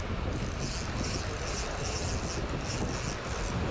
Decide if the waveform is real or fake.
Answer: real